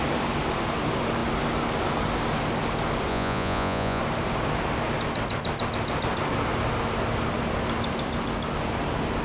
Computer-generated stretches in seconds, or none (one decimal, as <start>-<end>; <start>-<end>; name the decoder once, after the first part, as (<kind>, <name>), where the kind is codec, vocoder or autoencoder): 3.1-4.0 (vocoder, Vocos)